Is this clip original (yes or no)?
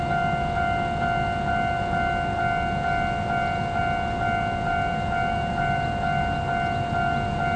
yes